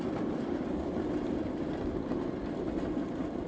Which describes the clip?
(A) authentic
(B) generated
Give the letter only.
A